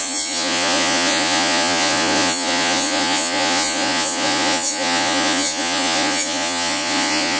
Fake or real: fake